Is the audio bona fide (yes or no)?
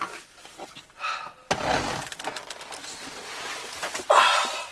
no